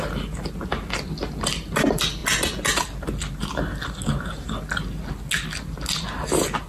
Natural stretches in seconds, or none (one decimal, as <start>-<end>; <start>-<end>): 0.0-6.7